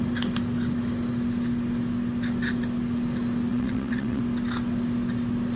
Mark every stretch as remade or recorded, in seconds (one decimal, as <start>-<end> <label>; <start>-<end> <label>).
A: 0.0-3.5 recorded; 3.5-4.2 remade; 4.2-5.6 recorded